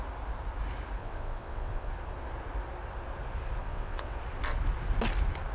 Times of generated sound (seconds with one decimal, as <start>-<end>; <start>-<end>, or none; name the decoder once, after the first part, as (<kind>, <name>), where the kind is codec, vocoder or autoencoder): 1.0-1.9 (vocoder, WaveNeXt); 3.6-4.2